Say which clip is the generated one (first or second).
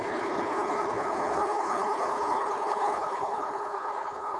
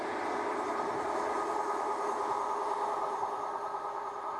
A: first